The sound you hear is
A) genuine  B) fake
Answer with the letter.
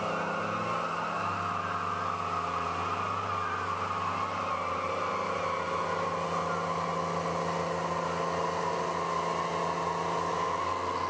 A